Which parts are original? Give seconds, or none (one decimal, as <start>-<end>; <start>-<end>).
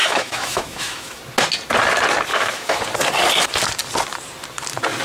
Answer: 1.2-2.3; 2.8-5.0